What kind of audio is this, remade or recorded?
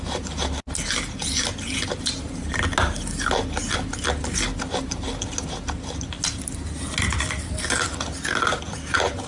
recorded